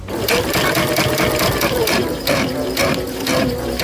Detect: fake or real fake